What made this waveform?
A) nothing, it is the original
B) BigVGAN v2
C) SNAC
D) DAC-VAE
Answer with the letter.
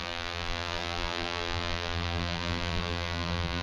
B